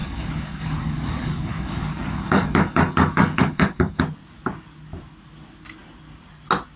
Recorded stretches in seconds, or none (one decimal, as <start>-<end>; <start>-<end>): 4.0-6.8